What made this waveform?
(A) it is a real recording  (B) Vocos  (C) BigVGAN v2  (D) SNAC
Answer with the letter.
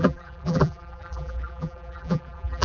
C